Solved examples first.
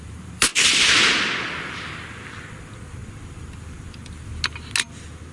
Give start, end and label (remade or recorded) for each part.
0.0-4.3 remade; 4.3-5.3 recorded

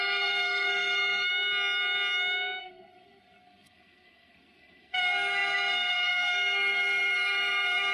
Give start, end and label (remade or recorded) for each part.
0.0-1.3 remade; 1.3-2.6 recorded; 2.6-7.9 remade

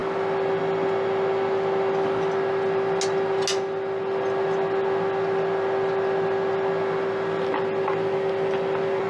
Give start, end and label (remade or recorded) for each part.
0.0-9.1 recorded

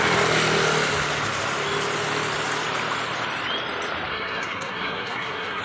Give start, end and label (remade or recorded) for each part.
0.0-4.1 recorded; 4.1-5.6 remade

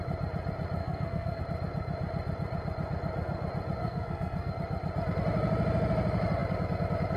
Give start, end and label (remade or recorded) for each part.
0.0-0.8 recorded; 0.8-1.4 remade; 1.4-3.8 recorded; 3.8-4.5 remade; 4.5-7.2 recorded

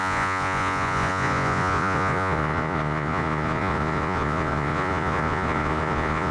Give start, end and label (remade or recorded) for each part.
0.0-6.3 remade